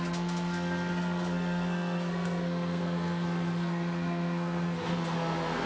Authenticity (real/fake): fake